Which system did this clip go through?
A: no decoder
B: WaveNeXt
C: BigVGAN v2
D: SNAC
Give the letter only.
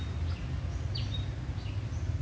A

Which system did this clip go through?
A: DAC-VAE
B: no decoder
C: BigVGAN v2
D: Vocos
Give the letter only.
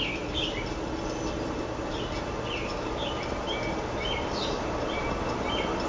B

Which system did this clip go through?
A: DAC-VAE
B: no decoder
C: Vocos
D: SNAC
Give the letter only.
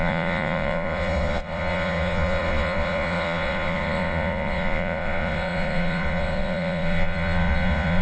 C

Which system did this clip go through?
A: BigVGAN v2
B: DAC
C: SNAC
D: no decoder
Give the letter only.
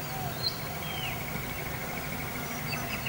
D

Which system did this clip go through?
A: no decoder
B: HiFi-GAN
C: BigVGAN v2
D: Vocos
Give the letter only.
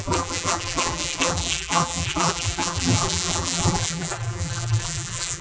C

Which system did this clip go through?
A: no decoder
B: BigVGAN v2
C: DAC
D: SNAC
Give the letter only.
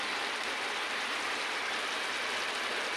B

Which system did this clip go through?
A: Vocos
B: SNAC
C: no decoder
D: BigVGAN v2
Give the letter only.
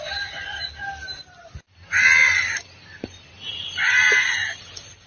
C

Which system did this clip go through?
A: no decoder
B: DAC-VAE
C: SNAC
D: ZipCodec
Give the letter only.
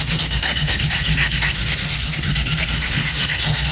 C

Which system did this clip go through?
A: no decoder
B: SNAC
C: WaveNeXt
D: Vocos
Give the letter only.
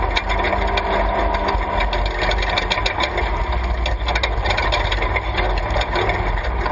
A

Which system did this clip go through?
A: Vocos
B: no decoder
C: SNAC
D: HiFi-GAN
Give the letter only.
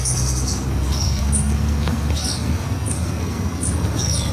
C